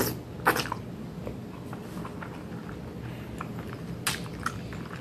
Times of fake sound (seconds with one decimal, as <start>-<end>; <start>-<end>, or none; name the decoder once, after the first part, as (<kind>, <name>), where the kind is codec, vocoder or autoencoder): none